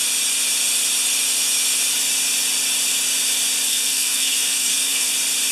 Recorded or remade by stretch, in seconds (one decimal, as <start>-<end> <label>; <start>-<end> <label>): 0.0-3.7 recorded; 3.7-5.1 remade; 5.1-5.5 recorded